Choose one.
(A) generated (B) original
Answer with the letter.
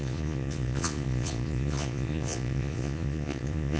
A